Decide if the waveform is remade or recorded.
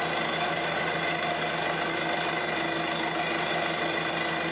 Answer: recorded